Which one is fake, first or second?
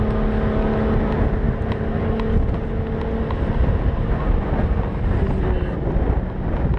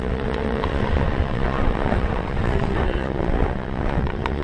second